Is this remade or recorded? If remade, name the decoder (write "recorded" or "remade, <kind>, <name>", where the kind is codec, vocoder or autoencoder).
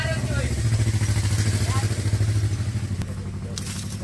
recorded